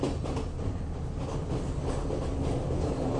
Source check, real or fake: real